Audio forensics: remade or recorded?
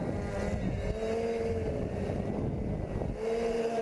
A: recorded